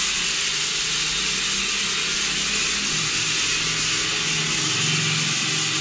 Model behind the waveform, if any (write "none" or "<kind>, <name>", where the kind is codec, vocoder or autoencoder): none